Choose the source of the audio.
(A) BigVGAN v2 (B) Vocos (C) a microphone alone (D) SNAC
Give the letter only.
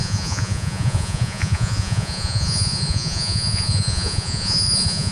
B